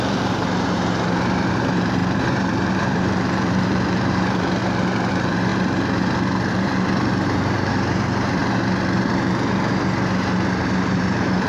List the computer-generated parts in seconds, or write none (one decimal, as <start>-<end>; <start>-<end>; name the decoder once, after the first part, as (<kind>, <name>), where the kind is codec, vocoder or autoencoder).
0.0-4.6 (vocoder, BigVGAN v2); 5.1-5.5; 6.5-8.4; 10.6-11.5